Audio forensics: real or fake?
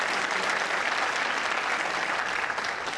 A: real